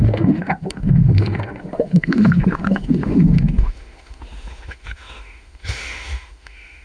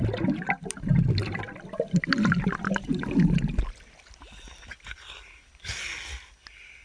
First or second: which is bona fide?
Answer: second